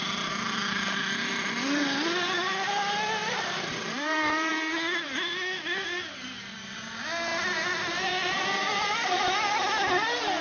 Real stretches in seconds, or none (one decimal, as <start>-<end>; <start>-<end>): 0.0-3.2; 4.5-7.3; 9.2-10.4